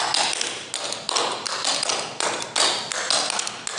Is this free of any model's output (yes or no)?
yes